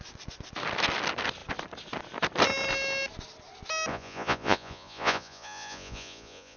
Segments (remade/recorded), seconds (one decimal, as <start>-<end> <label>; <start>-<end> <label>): 0.0-3.9 recorded; 3.9-6.6 remade